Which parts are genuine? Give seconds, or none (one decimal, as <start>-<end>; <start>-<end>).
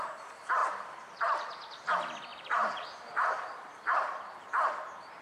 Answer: 0.0-0.6; 1.9-2.3; 4.5-5.2